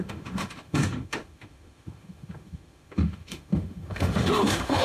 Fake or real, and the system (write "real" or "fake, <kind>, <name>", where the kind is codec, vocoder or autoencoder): fake, autoencoder, DAC-VAE